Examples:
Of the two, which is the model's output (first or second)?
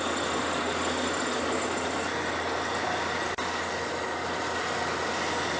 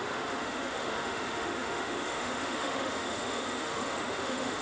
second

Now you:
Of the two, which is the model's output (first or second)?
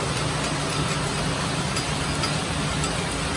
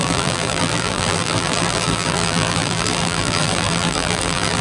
second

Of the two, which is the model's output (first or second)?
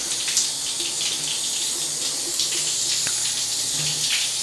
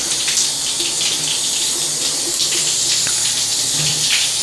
second